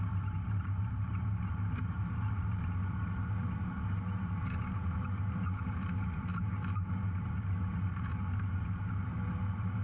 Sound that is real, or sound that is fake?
fake